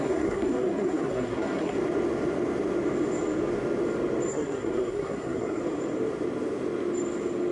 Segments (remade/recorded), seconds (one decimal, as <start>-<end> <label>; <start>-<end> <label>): 0.0-1.8 remade; 1.8-4.3 recorded; 4.3-5.6 remade; 5.6-7.5 recorded